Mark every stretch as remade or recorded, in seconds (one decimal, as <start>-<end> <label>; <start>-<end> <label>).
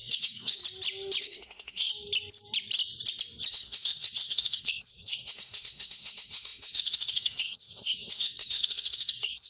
0.0-0.6 remade; 0.6-1.2 recorded; 1.2-1.9 remade; 1.9-3.5 recorded; 3.5-9.5 remade